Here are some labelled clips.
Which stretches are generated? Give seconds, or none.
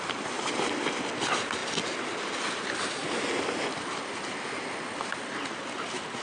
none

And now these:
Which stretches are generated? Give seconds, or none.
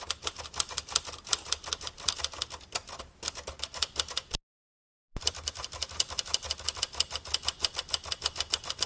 none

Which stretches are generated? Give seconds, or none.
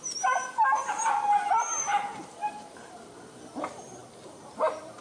0.0-5.0 (vocoder, BigVGAN v2)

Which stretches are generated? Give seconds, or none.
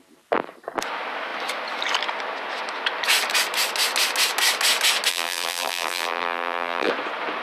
5.1-6.9 (vocoder, BigVGAN v2)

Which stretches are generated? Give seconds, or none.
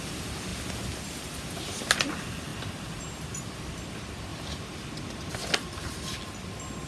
2.5-3.9 (vocoder, BigVGAN v2); 4.3-5.3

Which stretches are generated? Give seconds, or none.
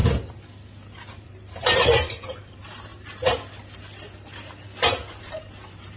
0.9-2.9 (vocoder, BigVGAN v2); 5.2-6.0